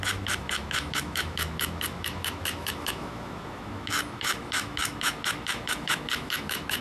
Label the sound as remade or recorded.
remade